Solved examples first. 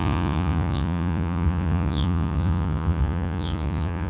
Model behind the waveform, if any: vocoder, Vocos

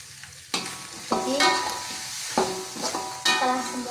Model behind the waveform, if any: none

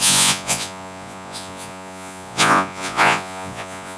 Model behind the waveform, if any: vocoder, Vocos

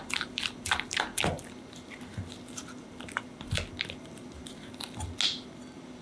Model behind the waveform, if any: none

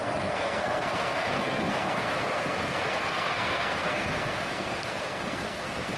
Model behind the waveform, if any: codec, SNAC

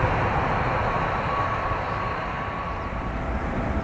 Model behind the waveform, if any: none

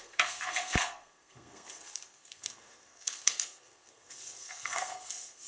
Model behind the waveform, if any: codec, SNAC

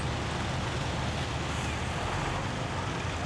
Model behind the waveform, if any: none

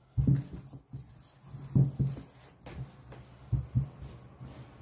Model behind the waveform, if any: none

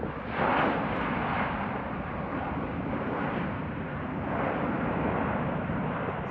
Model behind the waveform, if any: none